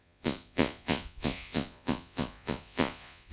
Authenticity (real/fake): fake